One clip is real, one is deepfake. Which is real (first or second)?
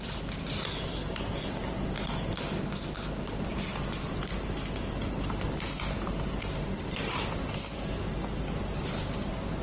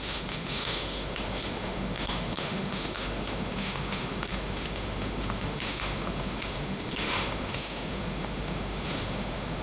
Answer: first